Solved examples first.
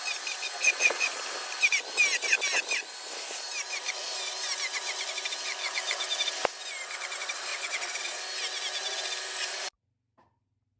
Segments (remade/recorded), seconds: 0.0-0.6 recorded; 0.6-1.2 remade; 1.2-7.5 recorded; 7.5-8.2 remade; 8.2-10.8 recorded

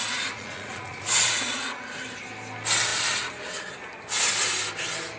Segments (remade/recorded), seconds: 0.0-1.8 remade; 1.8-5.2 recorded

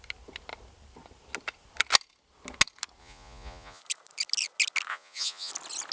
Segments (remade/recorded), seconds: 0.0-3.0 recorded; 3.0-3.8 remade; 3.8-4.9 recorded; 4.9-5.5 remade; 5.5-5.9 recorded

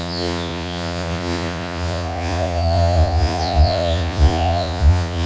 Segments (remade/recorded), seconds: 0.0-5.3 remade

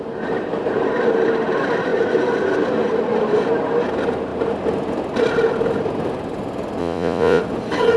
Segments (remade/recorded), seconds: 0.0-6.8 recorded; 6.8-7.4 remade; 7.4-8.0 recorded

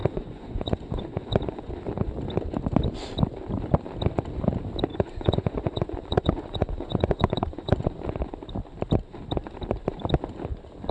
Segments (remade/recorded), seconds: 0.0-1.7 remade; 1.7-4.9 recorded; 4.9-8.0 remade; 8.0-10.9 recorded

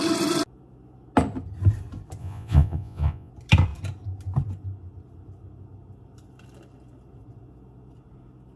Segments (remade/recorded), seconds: 0.0-2.2 recorded; 2.2-3.3 remade; 3.3-8.6 recorded

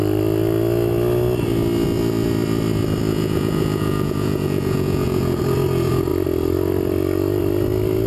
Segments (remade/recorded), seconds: 0.0-3.1 recorded; 3.1-5.4 remade; 5.4-8.1 recorded